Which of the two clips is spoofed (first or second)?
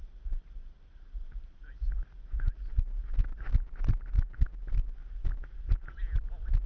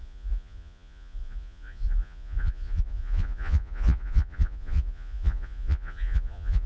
second